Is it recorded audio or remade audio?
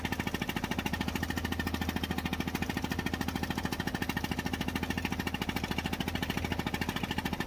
recorded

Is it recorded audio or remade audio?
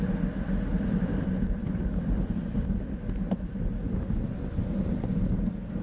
recorded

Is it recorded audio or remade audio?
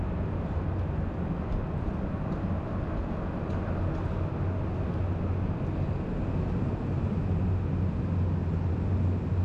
recorded